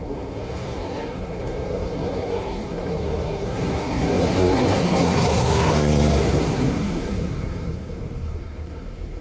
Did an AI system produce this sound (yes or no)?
yes